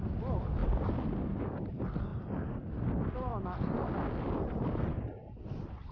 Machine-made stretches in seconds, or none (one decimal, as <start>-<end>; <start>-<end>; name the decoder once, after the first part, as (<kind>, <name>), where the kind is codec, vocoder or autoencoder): none